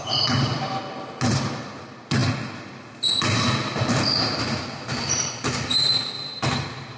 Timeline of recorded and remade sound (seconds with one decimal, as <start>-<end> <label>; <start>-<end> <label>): 0.0-7.0 recorded